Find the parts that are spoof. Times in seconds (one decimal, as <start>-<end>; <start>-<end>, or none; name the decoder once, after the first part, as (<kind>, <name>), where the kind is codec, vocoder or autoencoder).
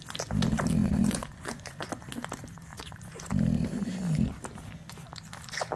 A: 0.8-1.9 (vocoder, Vocos); 2.7-3.3